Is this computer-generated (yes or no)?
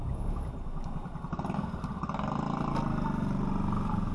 no